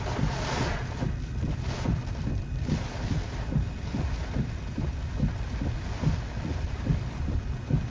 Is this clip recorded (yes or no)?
no